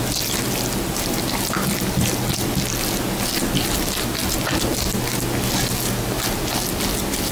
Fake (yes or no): no